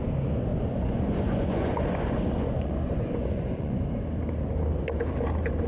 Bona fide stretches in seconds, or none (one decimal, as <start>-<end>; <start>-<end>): 0.0-0.5; 3.9-5.7